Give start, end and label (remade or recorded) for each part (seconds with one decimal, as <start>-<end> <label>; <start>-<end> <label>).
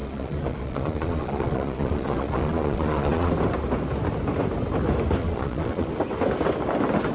0.0-3.3 remade; 3.3-5.2 recorded; 5.2-5.9 remade; 5.9-7.1 recorded